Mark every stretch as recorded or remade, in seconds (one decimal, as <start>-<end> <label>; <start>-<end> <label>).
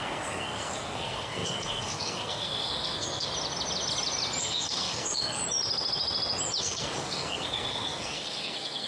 0.0-3.3 remade; 3.3-4.4 recorded; 4.4-5.4 remade; 5.4-6.6 recorded; 6.6-8.9 remade